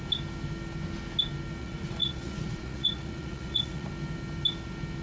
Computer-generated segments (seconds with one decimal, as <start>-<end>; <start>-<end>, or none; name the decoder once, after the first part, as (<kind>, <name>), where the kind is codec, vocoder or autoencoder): 1.6-3.9 (vocoder, Vocos)